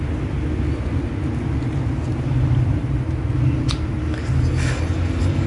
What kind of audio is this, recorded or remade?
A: recorded